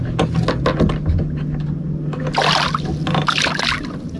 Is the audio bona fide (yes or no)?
yes